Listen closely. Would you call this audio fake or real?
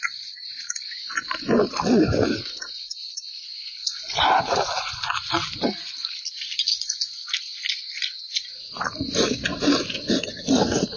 real